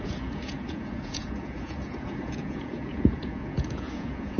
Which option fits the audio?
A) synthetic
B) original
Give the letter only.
A